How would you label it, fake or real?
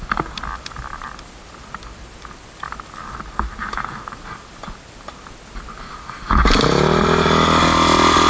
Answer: real